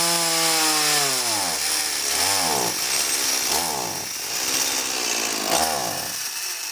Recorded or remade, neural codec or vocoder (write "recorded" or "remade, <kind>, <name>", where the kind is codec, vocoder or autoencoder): recorded